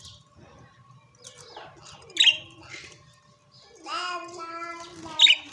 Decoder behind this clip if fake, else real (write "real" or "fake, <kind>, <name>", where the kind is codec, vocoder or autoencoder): real